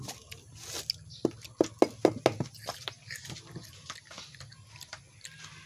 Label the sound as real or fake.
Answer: real